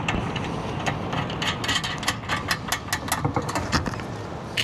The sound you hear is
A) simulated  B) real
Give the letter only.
B